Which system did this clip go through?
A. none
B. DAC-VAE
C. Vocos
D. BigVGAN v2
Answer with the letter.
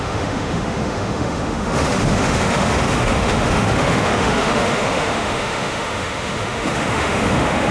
B